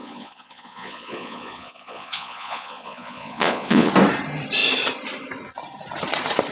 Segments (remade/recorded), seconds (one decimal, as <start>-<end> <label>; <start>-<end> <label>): 0.0-3.9 remade; 3.9-6.5 recorded